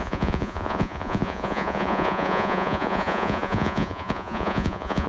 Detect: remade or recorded remade